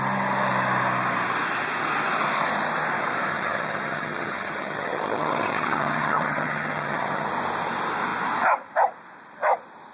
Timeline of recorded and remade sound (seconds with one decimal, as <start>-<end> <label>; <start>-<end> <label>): 0.0-3.3 recorded; 3.3-7.3 remade; 7.3-9.9 recorded